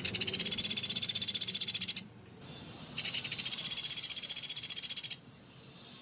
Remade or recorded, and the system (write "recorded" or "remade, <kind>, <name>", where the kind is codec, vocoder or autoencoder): recorded